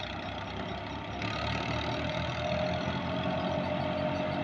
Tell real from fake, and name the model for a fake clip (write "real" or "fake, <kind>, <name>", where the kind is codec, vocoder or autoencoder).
real